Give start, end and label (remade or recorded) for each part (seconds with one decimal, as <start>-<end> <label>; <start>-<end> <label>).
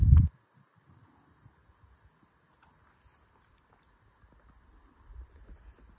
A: 0.0-6.0 recorded